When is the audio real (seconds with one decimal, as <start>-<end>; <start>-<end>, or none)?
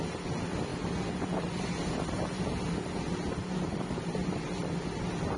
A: 0.0-5.4